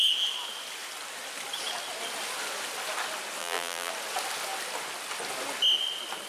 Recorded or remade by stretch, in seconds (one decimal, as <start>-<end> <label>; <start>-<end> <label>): 0.0-3.4 recorded; 3.4-3.9 remade; 3.9-6.3 recorded